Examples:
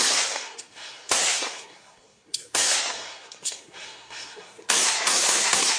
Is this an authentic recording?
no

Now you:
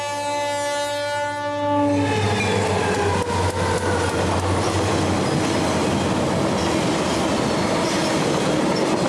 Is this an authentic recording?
yes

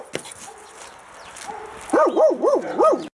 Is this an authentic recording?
yes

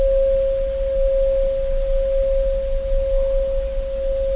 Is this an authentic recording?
yes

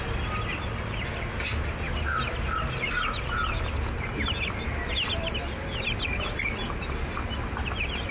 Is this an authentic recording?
yes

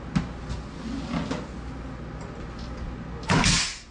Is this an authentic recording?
yes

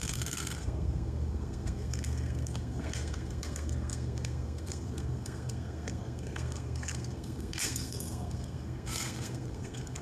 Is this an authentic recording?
no